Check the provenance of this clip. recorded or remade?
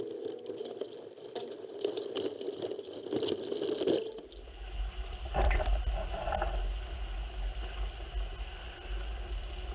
recorded